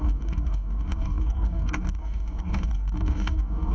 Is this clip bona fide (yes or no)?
no